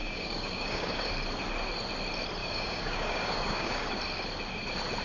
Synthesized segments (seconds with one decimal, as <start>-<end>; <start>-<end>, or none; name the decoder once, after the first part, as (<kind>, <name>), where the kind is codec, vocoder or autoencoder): 0.0-1.1 (codec, DAC); 2.4-3.9